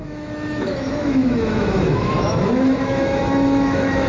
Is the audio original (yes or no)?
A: no